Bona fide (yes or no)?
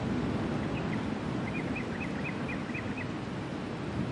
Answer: yes